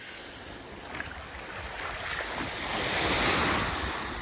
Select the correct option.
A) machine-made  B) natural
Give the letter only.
B